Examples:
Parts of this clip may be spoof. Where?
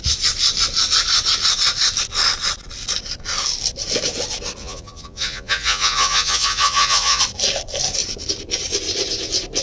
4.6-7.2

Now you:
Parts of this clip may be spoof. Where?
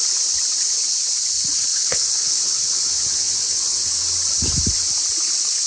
1.7-4.0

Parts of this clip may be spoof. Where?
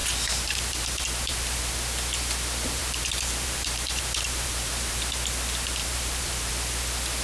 0.0-1.6; 2.8-5.0; 5.8-6.5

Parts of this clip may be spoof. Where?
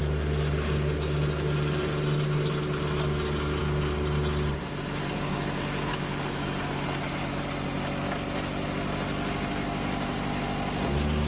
5.9-6.6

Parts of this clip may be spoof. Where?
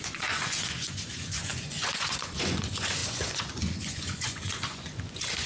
0.0-5.5